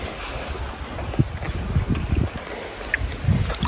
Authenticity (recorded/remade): recorded